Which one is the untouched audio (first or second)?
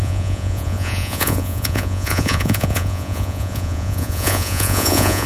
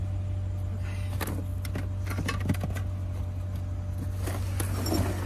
second